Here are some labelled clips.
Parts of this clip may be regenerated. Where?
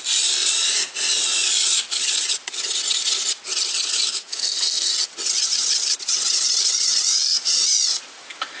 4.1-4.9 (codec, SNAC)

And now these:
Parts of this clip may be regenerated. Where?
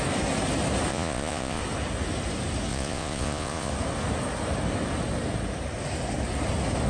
0.9-1.6 (vocoder, Vocos); 2.7-3.7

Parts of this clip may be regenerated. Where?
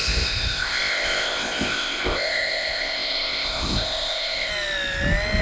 0.0-4.5 (codec, ZipCodec)